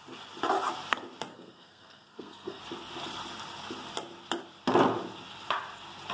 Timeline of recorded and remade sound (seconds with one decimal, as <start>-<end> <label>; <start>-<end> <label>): 0.0-1.3 recorded; 1.3-2.6 remade; 2.6-6.1 recorded